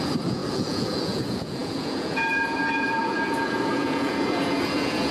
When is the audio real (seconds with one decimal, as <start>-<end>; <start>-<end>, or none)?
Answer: none